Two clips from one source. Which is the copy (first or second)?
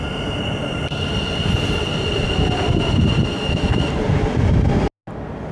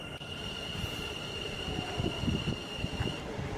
second